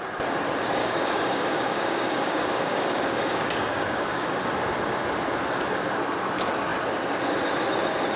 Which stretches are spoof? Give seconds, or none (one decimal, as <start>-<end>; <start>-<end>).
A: 0.8-4.5